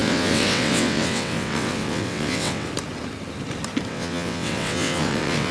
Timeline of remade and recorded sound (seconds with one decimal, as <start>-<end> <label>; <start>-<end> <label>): 0.0-2.7 remade; 2.7-3.9 recorded; 3.9-5.5 remade